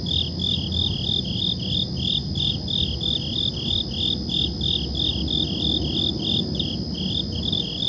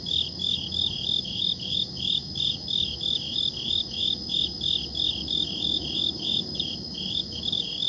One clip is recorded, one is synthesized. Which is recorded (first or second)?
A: first